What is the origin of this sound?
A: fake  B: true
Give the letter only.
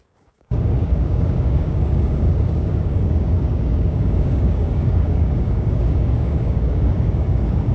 A